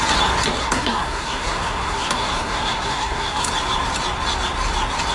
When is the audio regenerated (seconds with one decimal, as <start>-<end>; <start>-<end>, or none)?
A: 0.6-3.5